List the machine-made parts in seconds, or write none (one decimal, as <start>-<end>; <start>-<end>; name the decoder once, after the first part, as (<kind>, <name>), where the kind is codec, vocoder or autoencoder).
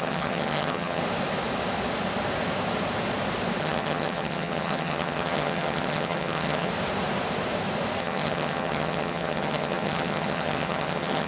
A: 0.0-1.0 (vocoder, HiFi-GAN); 3.6-6.7; 8.0-11.3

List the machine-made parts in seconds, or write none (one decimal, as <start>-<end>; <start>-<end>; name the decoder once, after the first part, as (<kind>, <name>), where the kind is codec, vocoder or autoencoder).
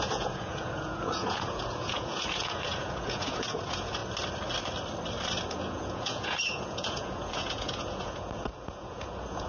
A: 0.0-4.0 (vocoder, Vocos); 5.5-9.5